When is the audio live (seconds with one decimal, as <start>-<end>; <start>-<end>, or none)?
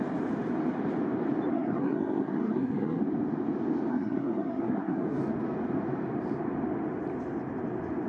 0.0-1.5; 3.0-3.9; 5.2-8.1